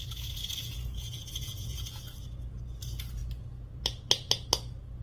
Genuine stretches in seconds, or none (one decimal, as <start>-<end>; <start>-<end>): 2.0-5.0